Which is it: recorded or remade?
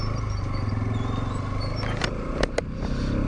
recorded